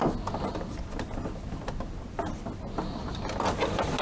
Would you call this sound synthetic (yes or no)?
no